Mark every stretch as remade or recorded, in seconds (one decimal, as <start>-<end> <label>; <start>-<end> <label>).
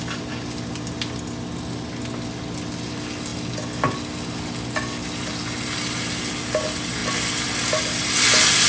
0.0-8.7 recorded